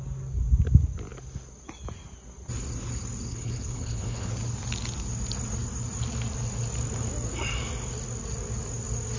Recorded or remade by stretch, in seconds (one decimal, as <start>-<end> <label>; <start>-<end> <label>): 0.0-3.3 recorded; 3.3-4.3 remade; 4.3-9.2 recorded